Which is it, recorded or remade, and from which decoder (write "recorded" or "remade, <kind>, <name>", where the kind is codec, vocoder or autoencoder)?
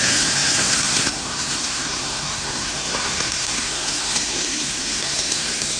remade, codec, SNAC